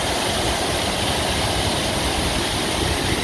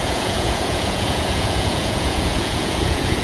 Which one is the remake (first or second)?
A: second